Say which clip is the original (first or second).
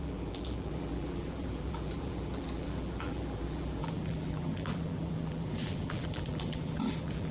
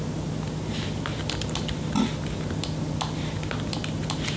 second